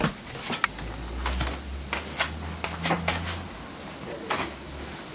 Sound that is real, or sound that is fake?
real